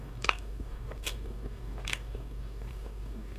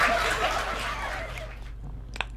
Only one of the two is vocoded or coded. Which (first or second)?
first